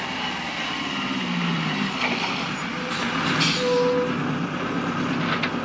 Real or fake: real